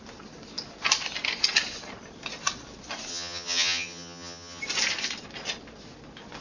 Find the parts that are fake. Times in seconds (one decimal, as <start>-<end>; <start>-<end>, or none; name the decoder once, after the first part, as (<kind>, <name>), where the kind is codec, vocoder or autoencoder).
3.1-4.6 (vocoder, HiFi-GAN)